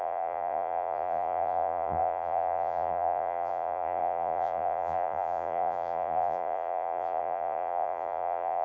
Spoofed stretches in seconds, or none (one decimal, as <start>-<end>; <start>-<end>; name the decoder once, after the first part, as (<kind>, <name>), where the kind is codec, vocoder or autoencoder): 0.0-8.6 (vocoder, Vocos)